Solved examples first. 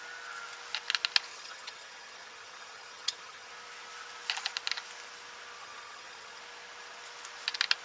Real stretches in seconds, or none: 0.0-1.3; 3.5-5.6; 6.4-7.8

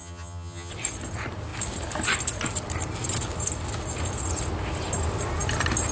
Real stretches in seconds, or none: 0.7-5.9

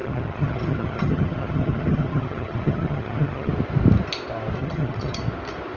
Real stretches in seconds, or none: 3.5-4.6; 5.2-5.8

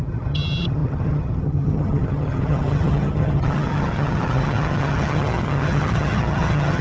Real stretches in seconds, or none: none

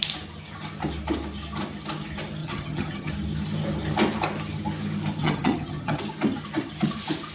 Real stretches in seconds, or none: 0.0-2.4; 3.1-5.2; 6.0-7.3

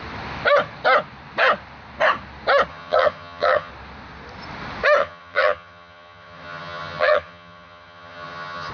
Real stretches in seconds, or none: 0.0-2.7; 3.7-5.0

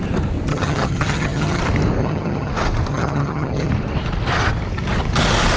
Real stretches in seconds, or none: 0.0-0.5; 1.6-2.0; 2.5-2.9; 3.7-5.6

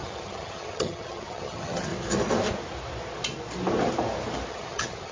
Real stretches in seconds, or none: 1.9-4.5